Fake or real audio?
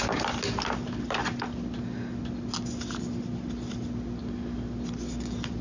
real